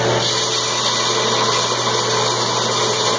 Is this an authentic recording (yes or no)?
yes